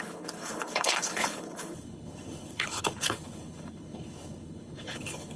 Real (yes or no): no